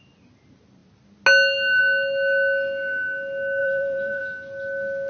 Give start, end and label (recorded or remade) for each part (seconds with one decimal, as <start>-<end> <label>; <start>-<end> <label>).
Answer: 0.0-3.6 recorded; 3.6-4.2 remade; 4.2-5.1 recorded